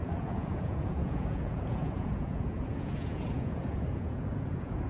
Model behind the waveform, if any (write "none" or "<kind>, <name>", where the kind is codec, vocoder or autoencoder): vocoder, Vocos